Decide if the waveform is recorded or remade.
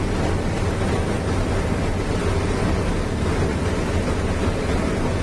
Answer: recorded